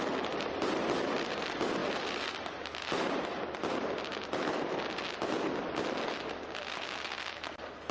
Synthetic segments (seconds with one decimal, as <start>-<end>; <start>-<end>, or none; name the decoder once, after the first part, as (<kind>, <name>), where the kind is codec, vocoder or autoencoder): none

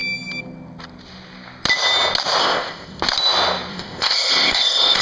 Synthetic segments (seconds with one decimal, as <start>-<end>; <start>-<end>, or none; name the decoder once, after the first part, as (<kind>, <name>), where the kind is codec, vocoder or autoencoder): 2.4-3.0 (codec, ZipCodec); 3.7-5.0

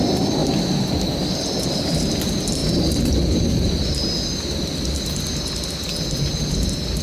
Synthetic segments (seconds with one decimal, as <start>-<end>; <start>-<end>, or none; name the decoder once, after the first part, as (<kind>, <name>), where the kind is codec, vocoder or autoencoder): none

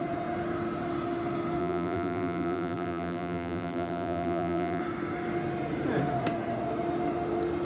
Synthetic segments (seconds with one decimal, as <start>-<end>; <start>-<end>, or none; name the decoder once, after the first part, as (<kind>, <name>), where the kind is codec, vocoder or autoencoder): 1.6-4.8 (vocoder, BigVGAN v2)

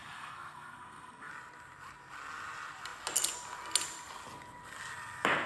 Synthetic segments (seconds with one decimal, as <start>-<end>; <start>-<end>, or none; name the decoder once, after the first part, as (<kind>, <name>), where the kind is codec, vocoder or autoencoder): 0.0-1.3 (codec, SNAC)

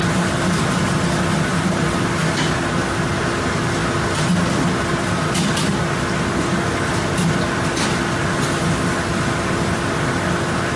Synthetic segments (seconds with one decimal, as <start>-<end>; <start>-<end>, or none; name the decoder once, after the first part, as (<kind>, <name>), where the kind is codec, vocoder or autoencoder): none

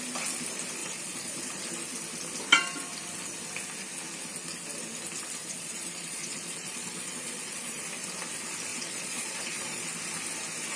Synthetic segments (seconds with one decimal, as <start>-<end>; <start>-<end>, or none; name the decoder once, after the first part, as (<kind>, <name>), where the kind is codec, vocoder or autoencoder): 0.8-1.6 (vocoder, Vocos); 5.4-7.8; 8.7-9.8

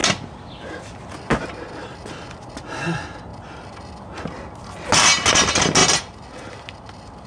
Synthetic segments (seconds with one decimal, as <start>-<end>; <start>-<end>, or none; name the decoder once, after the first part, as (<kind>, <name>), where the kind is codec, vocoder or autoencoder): none